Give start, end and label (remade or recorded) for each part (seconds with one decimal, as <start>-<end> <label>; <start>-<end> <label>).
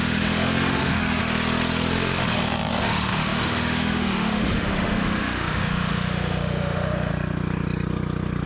0.0-1.2 remade; 1.2-2.8 recorded; 2.8-7.1 remade; 7.1-8.5 recorded